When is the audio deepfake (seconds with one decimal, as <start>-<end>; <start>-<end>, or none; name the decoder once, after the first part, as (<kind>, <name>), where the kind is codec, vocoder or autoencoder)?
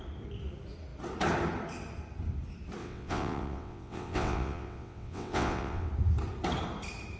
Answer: 2.8-5.9 (vocoder, WaveNeXt)